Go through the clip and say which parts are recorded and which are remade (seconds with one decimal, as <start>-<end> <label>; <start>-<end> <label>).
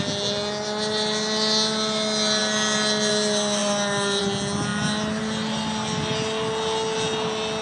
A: 0.0-7.6 recorded